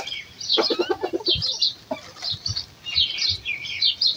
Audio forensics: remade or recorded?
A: recorded